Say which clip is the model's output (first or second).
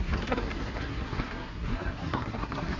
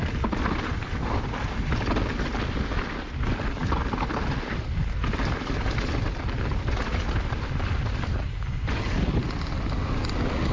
first